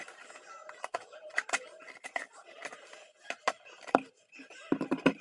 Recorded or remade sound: recorded